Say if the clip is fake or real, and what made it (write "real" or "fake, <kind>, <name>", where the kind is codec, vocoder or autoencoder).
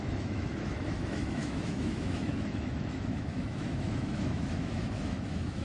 fake, autoencoder, DAC-VAE